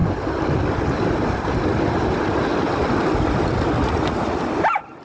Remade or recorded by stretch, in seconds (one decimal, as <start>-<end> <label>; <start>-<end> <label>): 0.0-3.8 recorded; 3.8-4.4 remade; 4.4-5.0 recorded